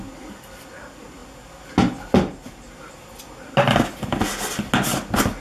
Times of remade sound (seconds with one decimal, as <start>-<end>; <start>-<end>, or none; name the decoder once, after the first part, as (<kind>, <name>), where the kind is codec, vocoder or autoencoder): none